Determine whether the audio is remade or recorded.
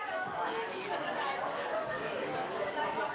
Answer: remade